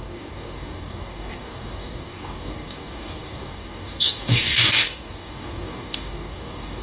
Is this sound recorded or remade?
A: remade